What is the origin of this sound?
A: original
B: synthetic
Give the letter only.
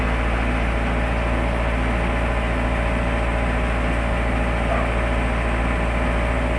A